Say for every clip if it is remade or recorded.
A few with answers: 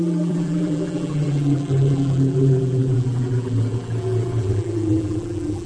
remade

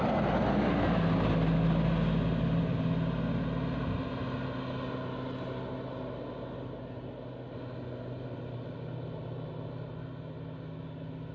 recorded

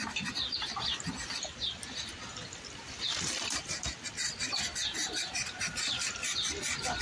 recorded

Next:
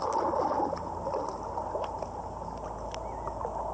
recorded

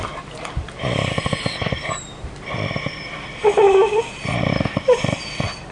remade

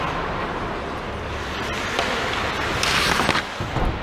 recorded